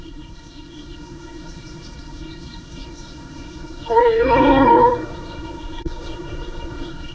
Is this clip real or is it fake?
fake